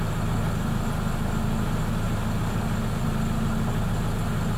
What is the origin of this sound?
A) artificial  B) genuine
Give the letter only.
B